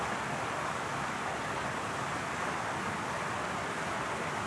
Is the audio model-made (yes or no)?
no